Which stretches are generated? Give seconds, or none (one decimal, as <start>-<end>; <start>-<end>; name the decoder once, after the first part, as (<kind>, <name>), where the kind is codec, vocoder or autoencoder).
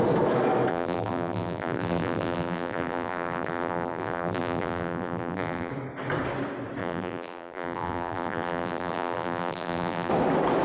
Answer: 0.7-5.7 (vocoder, BigVGAN v2); 6.8-10.1